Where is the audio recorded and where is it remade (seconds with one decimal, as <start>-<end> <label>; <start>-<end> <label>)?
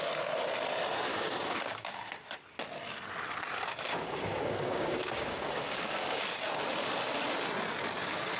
0.0-1.1 recorded; 1.1-2.0 remade; 2.0-3.9 recorded; 3.9-6.2 remade; 6.2-8.4 recorded